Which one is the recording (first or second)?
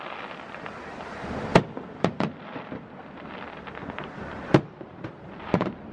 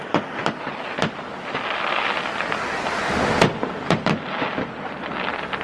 second